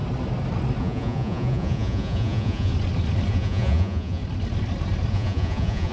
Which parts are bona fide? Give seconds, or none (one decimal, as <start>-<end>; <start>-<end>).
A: 0.0-0.8; 2.7-3.3; 4.2-5.1